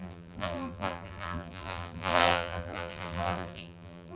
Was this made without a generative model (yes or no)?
no